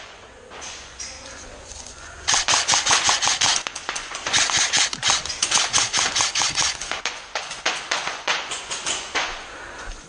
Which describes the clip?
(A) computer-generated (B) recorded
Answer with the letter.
A